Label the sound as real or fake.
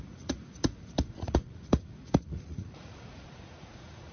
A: fake